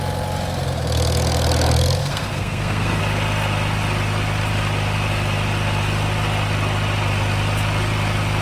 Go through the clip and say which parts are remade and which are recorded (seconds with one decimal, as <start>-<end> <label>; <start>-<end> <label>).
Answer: 0.0-2.0 recorded; 2.0-3.0 remade; 3.0-8.4 recorded